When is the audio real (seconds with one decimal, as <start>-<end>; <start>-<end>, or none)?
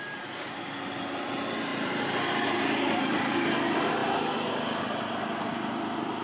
0.0-6.2